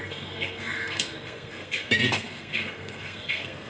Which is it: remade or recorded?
remade